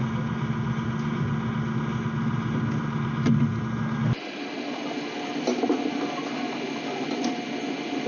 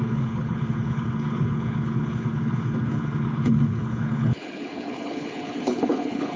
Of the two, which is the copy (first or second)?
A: second